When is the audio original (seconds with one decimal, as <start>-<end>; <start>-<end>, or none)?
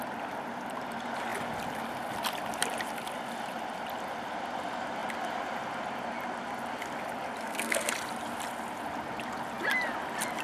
0.0-7.4; 7.9-10.4